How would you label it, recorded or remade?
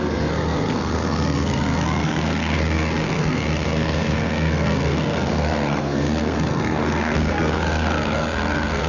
remade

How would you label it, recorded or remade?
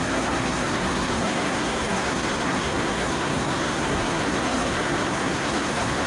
remade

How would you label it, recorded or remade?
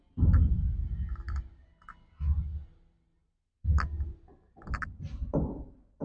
recorded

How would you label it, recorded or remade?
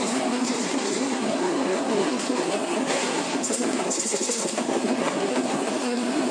remade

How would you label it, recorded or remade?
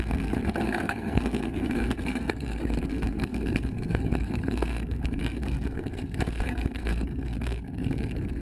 remade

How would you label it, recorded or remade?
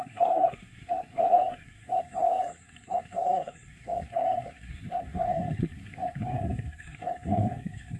remade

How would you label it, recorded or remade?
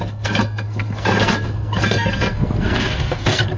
remade